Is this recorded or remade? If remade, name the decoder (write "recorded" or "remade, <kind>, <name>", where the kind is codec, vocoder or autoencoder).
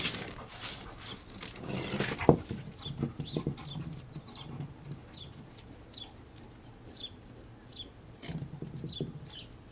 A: recorded